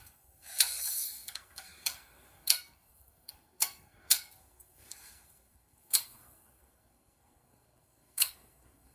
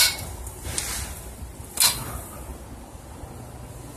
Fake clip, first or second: first